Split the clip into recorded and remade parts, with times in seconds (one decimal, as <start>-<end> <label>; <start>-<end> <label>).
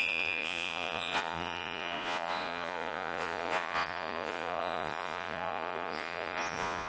0.0-6.9 remade